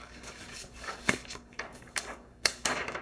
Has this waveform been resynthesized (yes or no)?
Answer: yes